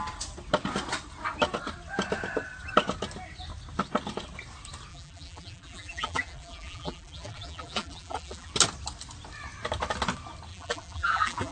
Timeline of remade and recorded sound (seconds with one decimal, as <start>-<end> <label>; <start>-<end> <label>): 0.0-4.9 recorded; 4.9-8.5 remade; 8.5-10.5 recorded; 10.5-11.5 remade